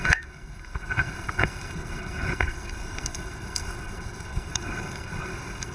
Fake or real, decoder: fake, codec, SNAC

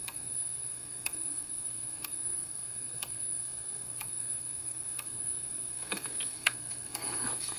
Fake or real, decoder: fake, codec, SNAC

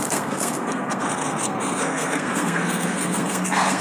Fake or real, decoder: fake, codec, SNAC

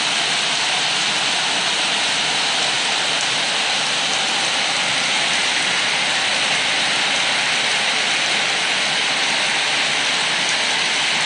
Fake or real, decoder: real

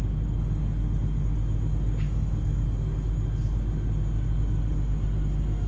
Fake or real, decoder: real